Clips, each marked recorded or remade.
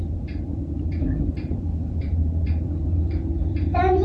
remade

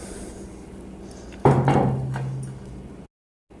recorded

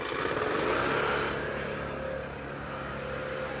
recorded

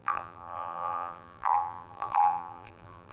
remade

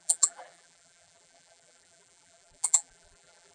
remade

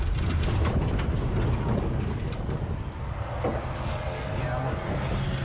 recorded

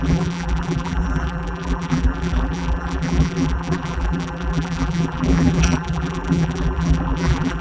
remade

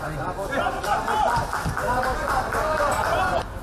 recorded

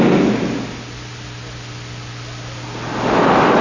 recorded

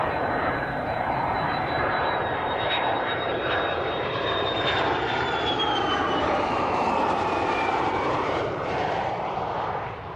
remade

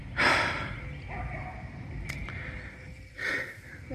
recorded